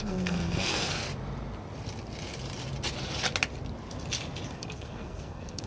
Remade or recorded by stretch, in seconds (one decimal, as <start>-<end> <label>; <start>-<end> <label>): 0.0-1.1 remade; 1.1-4.5 recorded; 4.5-5.7 remade